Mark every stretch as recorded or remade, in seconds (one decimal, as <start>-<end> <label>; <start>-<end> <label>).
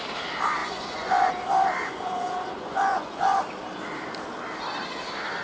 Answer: 0.0-0.6 recorded; 0.6-1.3 remade; 1.3-1.8 recorded; 1.8-3.4 remade; 3.4-5.4 recorded